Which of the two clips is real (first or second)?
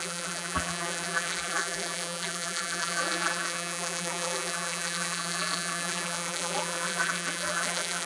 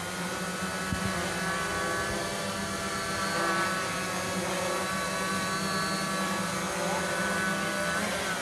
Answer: second